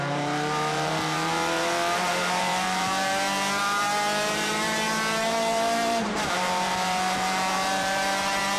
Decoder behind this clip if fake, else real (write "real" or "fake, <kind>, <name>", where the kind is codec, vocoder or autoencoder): fake, vocoder, BigVGAN v2